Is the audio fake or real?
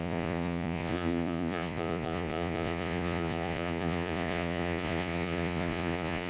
fake